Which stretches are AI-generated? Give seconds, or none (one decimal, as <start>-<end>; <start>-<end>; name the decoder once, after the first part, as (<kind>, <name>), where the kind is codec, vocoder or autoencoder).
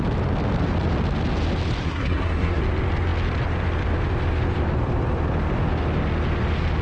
1.8-2.6 (codec, SNAC)